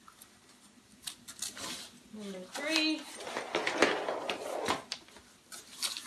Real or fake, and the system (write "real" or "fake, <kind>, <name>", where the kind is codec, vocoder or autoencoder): real